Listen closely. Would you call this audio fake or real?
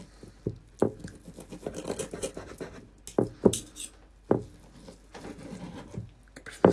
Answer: real